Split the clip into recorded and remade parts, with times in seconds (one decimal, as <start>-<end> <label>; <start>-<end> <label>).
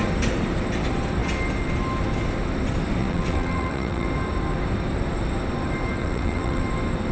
0.0-3.0 recorded; 3.0-4.1 remade; 4.1-6.0 recorded; 6.0-6.6 remade; 6.6-7.1 recorded